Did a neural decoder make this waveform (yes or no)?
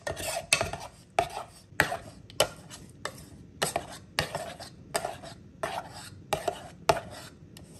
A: no